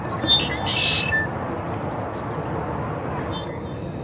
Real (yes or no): yes